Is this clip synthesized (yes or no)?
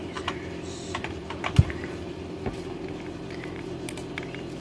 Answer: no